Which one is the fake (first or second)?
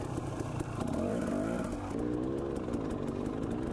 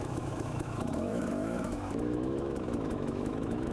second